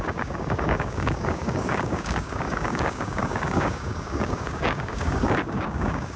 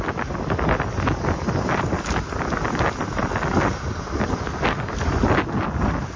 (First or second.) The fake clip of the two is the first